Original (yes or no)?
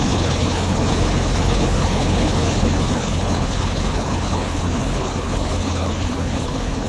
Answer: no